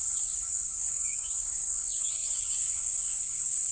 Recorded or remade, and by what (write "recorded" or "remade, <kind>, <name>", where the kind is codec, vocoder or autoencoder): remade, codec, DAC